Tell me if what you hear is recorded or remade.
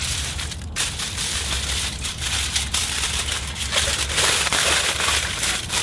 remade